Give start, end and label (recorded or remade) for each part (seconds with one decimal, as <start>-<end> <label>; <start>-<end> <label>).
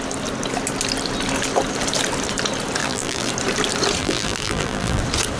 0.0-2.8 recorded; 2.8-3.3 remade; 3.3-4.0 recorded; 4.0-5.0 remade; 5.0-5.4 recorded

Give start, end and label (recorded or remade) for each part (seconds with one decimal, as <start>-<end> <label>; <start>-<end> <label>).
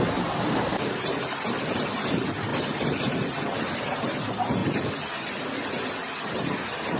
0.0-4.6 remade; 4.6-6.3 recorded; 6.3-7.0 remade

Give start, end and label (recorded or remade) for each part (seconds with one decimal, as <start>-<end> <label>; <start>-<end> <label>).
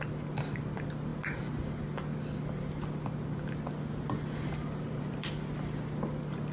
0.0-6.5 recorded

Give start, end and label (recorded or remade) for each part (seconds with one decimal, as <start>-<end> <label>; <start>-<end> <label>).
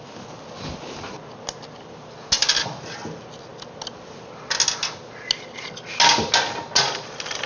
0.0-7.5 recorded